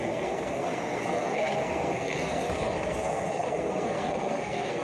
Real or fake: fake